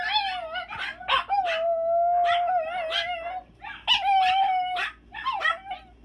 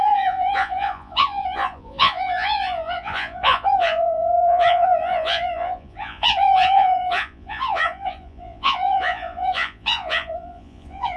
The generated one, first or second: second